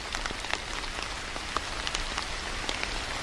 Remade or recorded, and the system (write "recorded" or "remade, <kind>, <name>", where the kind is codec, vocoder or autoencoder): recorded